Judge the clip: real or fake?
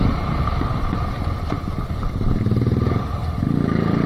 real